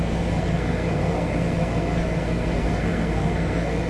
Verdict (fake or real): fake